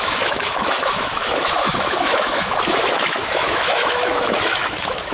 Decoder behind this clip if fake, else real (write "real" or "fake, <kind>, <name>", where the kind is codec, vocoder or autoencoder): fake, autoencoder, DAC-VAE